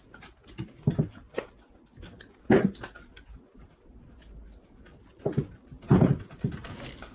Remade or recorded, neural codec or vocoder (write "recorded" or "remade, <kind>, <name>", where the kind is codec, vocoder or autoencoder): recorded